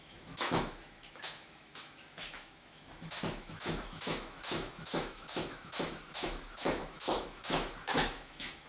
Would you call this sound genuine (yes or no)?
no